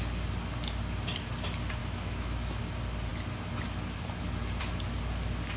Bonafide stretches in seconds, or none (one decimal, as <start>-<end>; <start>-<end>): 0.0-1.8; 2.6-5.6